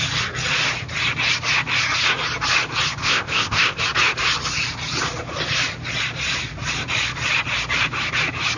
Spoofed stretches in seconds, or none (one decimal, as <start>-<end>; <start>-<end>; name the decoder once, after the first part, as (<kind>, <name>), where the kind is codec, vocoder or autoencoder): 3.0-3.8 (codec, ZipCodec)